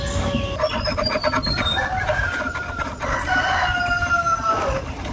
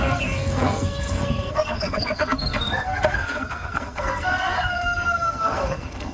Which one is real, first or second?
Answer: first